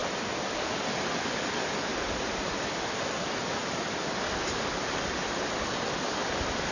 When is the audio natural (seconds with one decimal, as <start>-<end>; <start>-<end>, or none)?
1.1-1.9; 2.5-6.7